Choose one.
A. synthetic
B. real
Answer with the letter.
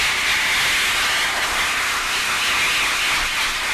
B